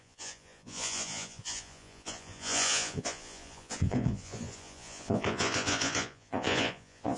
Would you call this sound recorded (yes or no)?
no